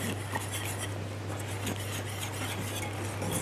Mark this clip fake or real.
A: real